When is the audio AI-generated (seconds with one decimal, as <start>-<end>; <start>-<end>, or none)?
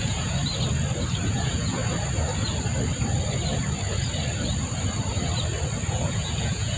0.0-0.4; 1.3-1.8; 5.9-6.8